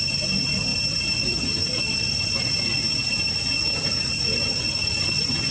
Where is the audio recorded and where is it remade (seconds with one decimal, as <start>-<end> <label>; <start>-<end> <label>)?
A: 0.0-5.5 recorded